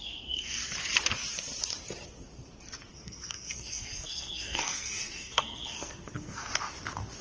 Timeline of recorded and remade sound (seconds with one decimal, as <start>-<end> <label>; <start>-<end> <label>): 0.0-0.6 remade; 0.6-2.9 recorded; 2.9-6.5 remade; 6.5-7.2 recorded